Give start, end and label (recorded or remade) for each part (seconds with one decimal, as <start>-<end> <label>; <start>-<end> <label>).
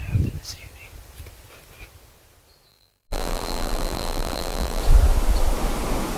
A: 0.0-2.7 recorded; 2.7-4.8 remade; 4.8-6.2 recorded